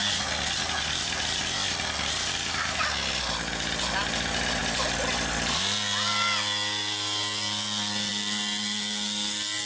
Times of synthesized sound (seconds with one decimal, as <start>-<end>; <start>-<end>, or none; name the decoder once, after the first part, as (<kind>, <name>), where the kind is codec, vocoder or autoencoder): none